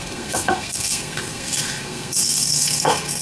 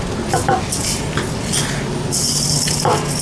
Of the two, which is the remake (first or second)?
first